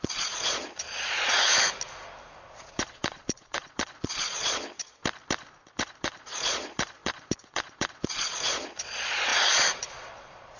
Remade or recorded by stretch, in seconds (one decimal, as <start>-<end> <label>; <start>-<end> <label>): 0.0-1.5 remade; 1.5-2.5 recorded; 2.5-5.0 remade; 5.0-5.6 recorded; 5.6-10.6 remade